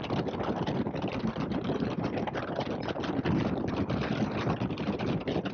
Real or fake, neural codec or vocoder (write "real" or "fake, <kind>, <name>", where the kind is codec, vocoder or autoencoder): real